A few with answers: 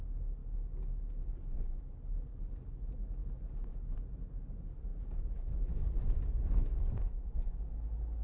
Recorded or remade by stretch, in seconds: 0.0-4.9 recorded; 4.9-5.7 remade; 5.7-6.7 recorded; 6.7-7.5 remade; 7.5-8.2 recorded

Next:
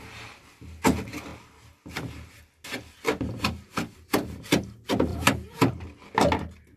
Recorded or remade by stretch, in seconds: 0.0-5.1 recorded; 5.1-5.7 remade; 5.7-6.8 recorded

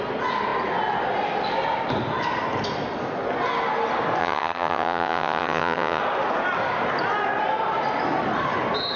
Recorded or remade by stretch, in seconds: 0.0-4.2 recorded; 4.2-6.0 remade; 6.0-9.0 recorded

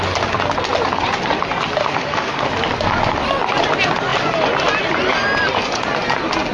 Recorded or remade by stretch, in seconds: 0.0-1.8 recorded; 1.8-2.5 remade; 2.5-6.5 recorded

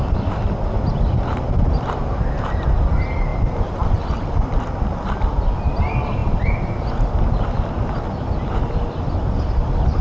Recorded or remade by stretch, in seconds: 0.0-10.0 recorded

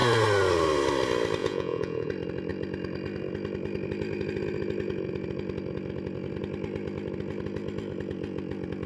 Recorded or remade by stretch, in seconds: 0.0-1.4 recorded; 1.4-2.1 remade; 2.1-8.9 recorded

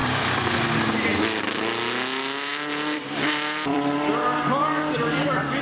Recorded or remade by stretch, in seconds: 0.0-0.8 remade; 0.8-2.5 recorded; 2.5-4.1 remade; 4.1-5.6 recorded

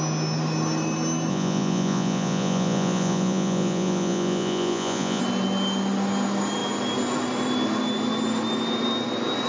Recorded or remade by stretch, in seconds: 0.0-1.3 recorded; 1.3-5.2 remade; 5.2-9.5 recorded